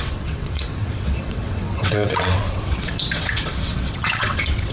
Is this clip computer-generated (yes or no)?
yes